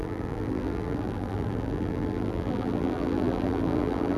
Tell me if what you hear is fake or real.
fake